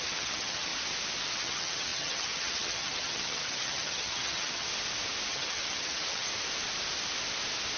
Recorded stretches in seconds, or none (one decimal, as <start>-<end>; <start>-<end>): 0.7-1.2; 4.7-5.3; 6.3-7.8